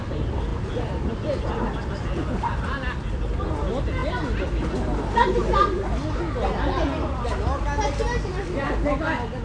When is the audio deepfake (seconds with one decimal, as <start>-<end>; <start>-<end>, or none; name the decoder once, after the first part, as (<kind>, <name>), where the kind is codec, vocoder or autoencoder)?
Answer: none